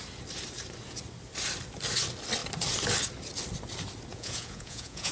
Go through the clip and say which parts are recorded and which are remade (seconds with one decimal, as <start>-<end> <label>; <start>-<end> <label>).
0.0-4.1 recorded; 4.1-5.1 remade